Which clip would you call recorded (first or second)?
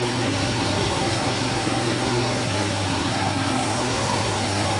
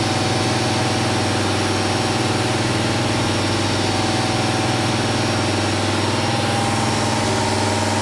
second